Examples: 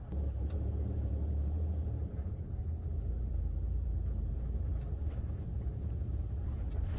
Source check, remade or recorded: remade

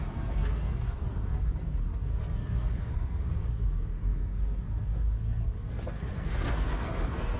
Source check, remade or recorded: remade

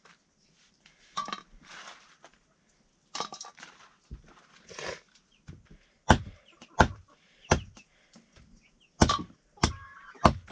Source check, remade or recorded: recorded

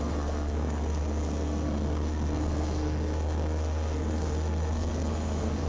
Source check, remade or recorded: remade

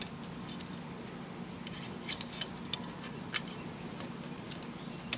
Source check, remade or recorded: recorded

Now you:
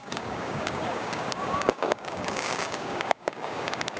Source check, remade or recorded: remade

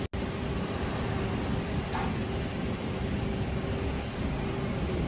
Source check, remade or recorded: recorded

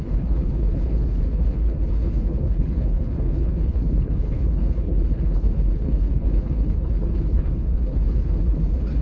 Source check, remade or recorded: remade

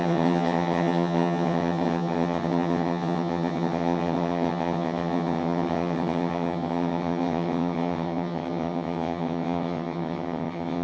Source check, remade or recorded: remade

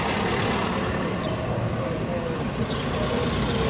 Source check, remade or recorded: recorded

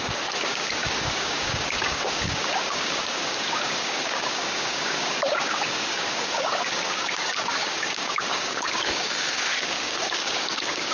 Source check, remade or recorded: remade